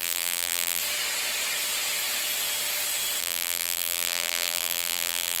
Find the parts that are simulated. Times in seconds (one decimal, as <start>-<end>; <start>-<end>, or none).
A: 0.0-0.8; 3.2-5.4